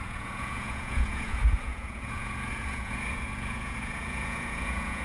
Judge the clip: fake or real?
fake